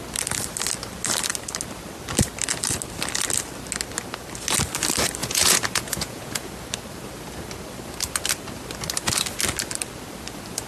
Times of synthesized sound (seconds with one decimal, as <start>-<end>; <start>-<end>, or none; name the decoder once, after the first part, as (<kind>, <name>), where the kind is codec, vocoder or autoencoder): 5.2-6.5 (vocoder, Vocos)